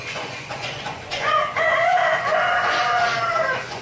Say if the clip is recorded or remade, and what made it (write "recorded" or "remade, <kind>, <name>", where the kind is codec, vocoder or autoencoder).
remade, vocoder, Vocos